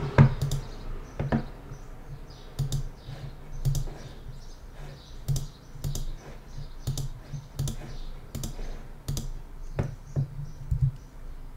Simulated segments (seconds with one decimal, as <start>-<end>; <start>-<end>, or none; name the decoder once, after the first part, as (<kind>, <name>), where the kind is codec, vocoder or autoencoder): 9.6-11.0 (vocoder, BigVGAN v2)